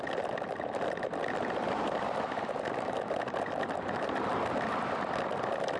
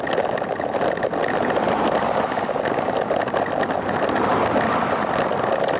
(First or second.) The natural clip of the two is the second